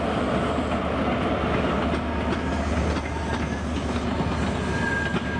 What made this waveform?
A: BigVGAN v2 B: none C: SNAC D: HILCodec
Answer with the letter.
B